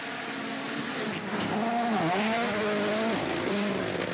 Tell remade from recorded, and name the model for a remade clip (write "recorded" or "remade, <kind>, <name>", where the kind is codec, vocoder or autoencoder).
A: recorded